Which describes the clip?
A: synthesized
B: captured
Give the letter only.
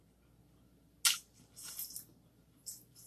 B